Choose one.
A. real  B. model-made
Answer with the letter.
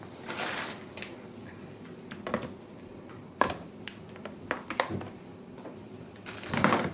A